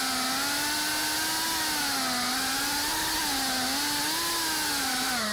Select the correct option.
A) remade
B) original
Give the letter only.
B